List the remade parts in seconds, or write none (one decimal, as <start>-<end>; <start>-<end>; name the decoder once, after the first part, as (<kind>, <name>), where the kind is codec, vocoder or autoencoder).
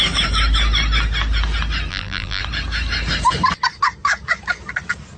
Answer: 1.9-2.4 (vocoder, BigVGAN v2)